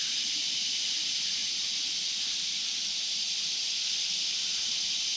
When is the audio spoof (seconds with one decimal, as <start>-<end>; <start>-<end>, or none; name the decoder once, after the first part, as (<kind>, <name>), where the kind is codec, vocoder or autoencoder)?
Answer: none